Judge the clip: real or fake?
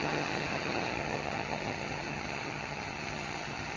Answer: fake